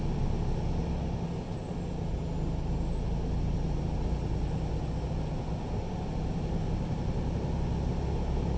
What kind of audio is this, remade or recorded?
recorded